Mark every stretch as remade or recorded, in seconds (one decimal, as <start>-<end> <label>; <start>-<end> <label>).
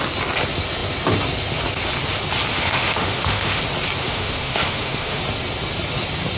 0.0-2.5 recorded; 2.5-3.6 remade; 3.6-4.0 recorded; 4.0-5.2 remade; 5.2-6.4 recorded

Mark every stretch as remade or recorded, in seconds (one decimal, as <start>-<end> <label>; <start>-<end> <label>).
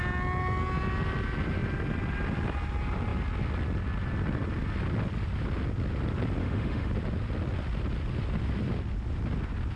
0.0-6.4 recorded; 6.4-6.9 remade; 6.9-9.8 recorded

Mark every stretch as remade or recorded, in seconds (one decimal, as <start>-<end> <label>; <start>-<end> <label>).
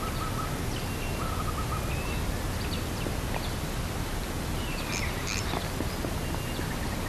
0.0-7.1 recorded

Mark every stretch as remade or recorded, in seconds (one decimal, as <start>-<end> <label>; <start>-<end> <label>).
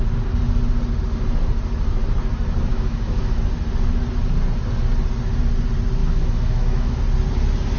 0.0-2.7 recorded; 2.7-3.4 remade; 3.4-6.0 recorded; 6.0-7.0 remade; 7.0-7.8 recorded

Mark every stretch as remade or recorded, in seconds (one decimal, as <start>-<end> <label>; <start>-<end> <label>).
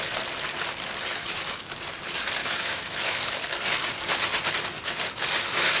0.0-1.1 recorded; 1.1-1.6 remade; 1.6-2.4 recorded; 2.4-3.3 remade; 3.3-5.8 recorded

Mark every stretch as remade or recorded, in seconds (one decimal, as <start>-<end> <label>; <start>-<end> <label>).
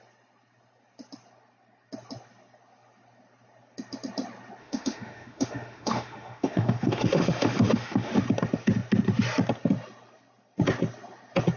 0.0-4.6 recorded; 4.6-8.1 remade; 8.1-11.6 recorded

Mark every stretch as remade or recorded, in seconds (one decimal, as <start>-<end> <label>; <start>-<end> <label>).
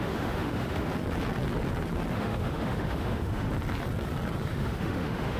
0.0-0.9 remade; 0.9-2.1 recorded; 2.1-3.5 remade; 3.5-4.5 recorded; 4.5-5.4 remade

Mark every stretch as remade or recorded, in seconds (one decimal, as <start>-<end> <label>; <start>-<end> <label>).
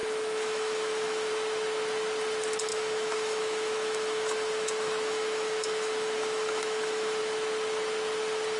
0.0-1.3 remade; 1.3-2.7 recorded; 2.7-7.2 remade; 7.2-8.6 recorded